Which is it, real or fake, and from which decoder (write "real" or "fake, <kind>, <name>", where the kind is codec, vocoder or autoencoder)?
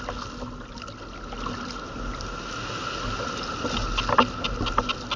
real